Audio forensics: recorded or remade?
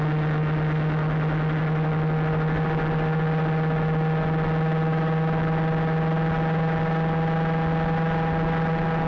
recorded